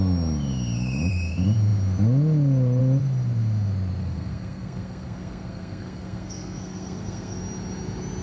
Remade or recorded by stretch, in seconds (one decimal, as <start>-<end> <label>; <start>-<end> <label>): 0.0-4.0 recorded; 4.0-7.4 remade; 7.4-8.2 recorded